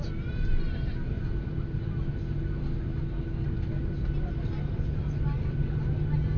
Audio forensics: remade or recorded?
recorded